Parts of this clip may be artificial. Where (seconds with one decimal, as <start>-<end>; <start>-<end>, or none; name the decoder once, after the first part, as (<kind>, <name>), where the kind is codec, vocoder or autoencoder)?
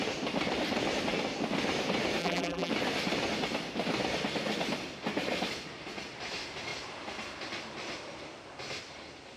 2.2-2.7 (vocoder, BigVGAN v2)